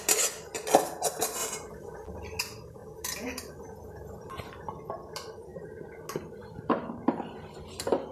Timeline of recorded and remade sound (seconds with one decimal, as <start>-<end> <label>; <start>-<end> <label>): 0.0-1.4 recorded; 1.4-2.4 remade; 2.4-2.8 recorded; 2.8-4.7 remade; 4.7-8.1 recorded